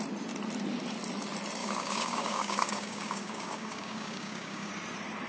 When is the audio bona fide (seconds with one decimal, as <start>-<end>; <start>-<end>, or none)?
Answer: 0.0-1.6; 4.7-5.3